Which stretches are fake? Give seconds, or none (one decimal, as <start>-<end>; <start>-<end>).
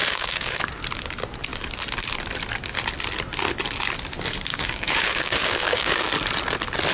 0.0-0.6; 4.5-6.1